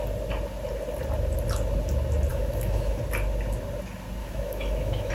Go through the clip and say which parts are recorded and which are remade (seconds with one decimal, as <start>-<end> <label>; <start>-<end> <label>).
0.0-2.3 recorded; 2.3-3.0 remade; 3.0-4.2 recorded; 4.2-5.1 remade